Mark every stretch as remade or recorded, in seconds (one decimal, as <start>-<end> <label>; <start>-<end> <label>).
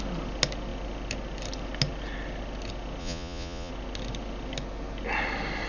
0.0-3.0 recorded; 3.0-3.7 remade; 3.7-5.7 recorded